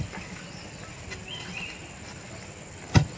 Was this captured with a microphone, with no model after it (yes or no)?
yes